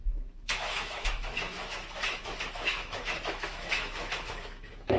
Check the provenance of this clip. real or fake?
fake